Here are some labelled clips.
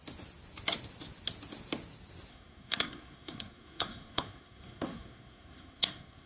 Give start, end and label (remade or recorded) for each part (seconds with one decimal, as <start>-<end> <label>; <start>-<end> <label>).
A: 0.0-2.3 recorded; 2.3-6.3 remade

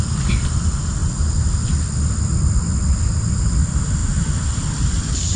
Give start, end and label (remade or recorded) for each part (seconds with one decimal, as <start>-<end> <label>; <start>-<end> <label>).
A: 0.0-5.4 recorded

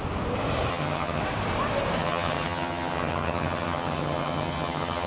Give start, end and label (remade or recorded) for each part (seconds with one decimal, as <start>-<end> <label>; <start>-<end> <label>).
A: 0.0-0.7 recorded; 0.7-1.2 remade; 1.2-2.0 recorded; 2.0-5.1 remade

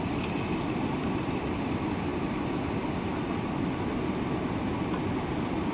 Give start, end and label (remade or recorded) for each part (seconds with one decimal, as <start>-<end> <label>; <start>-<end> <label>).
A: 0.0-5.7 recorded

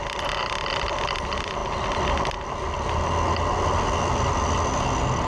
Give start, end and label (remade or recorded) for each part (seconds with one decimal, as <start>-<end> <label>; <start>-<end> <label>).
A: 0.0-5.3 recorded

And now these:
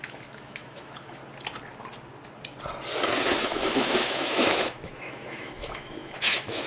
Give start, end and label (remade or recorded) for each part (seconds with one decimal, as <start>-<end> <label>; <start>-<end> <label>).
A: 0.0-1.2 remade; 1.2-3.3 recorded; 3.3-6.7 remade